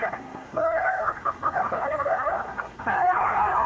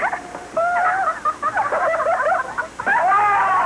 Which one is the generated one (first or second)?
first